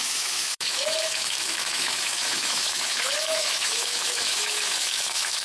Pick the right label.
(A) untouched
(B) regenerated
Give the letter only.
B